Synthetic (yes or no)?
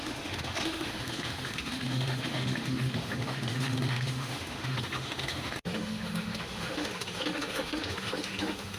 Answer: yes